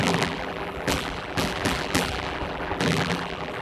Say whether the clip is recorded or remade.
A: remade